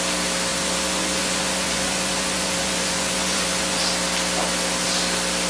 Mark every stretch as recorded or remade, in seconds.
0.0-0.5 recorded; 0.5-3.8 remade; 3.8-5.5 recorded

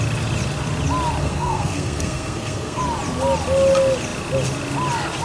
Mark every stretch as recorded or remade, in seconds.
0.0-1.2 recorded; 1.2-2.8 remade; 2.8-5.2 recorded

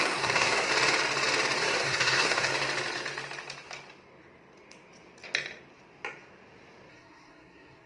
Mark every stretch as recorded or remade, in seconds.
0.0-0.7 remade; 0.7-1.6 recorded; 1.6-2.5 remade; 2.5-6.9 recorded; 6.9-7.9 remade

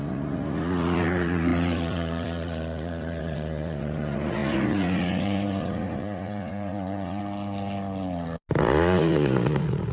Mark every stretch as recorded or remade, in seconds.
0.0-7.2 remade; 7.2-8.6 recorded; 8.6-9.9 remade

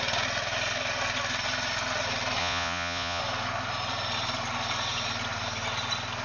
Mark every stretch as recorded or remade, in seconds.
0.0-2.4 recorded; 2.4-3.2 remade; 3.2-6.2 recorded

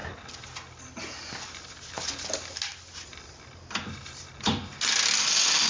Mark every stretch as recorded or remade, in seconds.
0.0-5.7 recorded